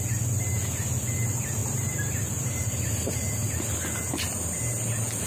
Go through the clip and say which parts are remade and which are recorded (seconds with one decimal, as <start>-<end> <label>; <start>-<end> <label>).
0.0-1.6 recorded; 1.6-3.5 remade; 3.5-5.3 recorded